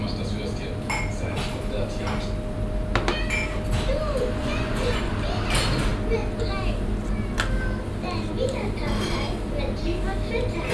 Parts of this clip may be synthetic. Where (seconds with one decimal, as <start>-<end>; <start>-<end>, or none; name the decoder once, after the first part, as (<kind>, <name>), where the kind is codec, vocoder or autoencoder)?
4.4-5.1 (vocoder, Vocos)